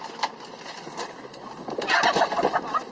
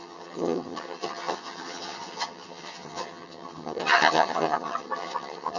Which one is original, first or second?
first